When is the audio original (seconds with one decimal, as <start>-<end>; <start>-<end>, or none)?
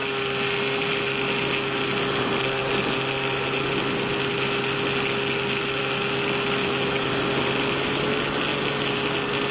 0.0-6.6; 7.1-9.5